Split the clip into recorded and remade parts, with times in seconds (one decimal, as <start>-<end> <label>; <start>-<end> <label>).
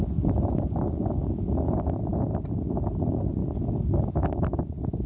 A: 0.0-5.1 recorded